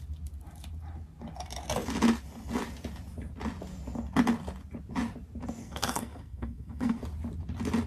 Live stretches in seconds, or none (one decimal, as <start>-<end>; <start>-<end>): 0.0-5.6; 7.0-7.9